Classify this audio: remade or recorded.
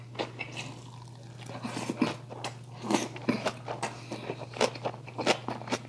recorded